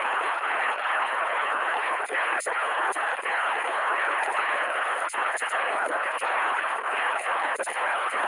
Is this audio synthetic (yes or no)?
yes